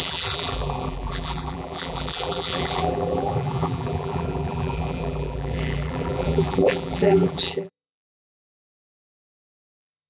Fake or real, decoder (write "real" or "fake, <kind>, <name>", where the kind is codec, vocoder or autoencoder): fake, vocoder, BigVGAN v2